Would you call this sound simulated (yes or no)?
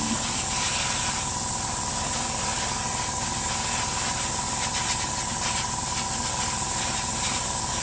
no